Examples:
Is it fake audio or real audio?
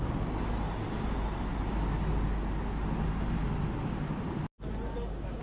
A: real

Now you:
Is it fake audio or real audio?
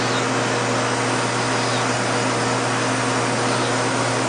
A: real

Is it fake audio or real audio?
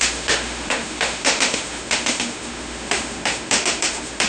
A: fake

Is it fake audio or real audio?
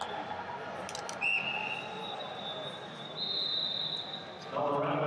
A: real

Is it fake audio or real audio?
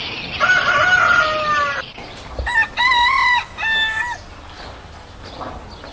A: real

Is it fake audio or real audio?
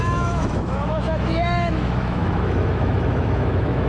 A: fake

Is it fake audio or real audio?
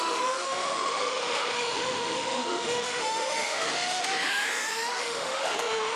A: fake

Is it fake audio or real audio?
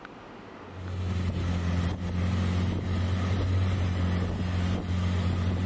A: real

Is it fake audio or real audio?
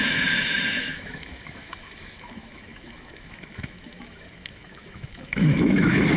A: fake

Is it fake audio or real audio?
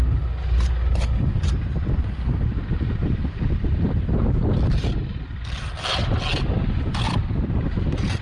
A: real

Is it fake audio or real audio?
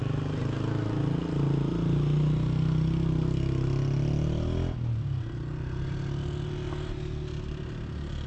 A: real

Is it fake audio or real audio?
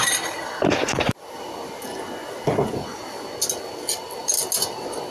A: real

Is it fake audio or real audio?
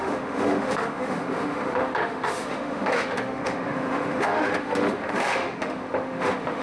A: fake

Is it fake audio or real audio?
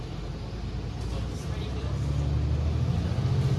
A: real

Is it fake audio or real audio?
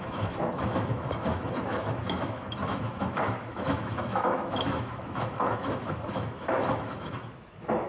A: fake